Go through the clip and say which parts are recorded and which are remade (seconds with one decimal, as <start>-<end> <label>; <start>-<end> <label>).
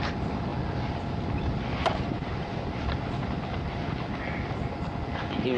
0.0-5.6 recorded